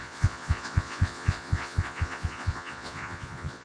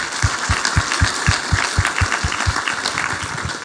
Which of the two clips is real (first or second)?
second